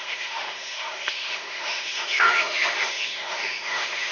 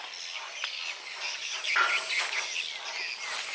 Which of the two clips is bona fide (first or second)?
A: second